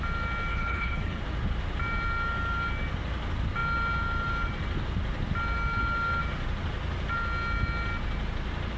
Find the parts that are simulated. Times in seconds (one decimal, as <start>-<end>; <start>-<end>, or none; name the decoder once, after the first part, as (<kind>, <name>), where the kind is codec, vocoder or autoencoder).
0.5-1.2 (codec, HILCodec)